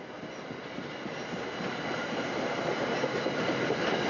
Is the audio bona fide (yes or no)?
yes